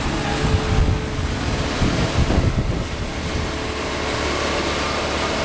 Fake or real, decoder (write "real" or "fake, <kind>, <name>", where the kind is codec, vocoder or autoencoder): real